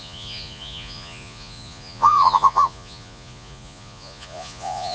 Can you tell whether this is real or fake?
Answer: fake